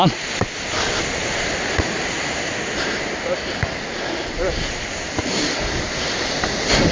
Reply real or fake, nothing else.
real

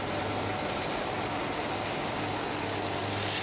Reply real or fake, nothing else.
real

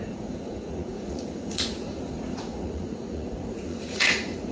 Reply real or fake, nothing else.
fake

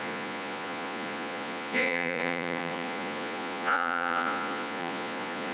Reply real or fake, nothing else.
fake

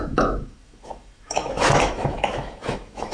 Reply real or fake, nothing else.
fake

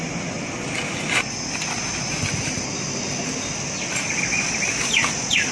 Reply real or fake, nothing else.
real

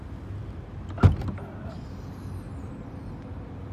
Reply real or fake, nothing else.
real